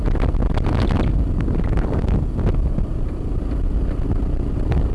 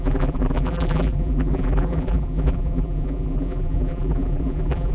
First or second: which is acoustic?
first